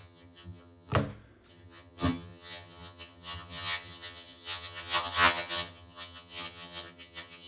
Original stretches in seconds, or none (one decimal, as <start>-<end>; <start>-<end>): 0.9-1.5